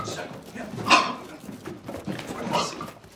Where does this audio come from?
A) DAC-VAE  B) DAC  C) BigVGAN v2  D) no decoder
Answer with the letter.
D